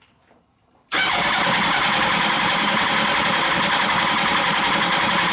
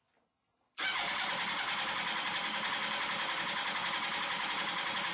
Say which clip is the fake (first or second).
first